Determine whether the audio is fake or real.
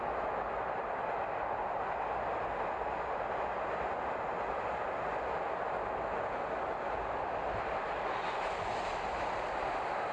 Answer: real